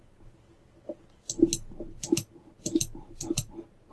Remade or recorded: recorded